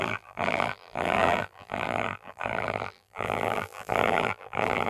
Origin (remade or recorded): remade